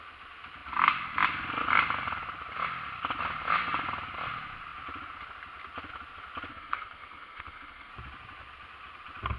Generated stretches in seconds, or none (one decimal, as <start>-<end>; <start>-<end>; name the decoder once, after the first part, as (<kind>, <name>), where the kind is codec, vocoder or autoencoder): 6.5-7.9 (codec, SNAC)